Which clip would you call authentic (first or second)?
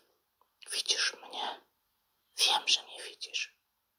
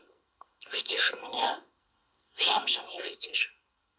first